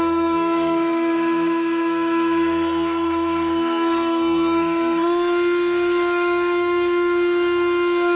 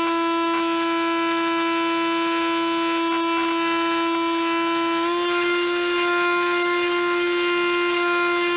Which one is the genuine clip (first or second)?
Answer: second